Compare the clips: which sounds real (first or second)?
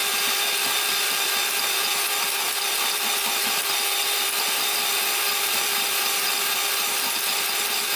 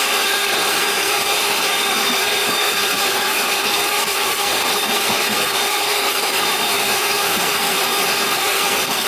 first